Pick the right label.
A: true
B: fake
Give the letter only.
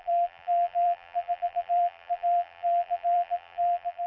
B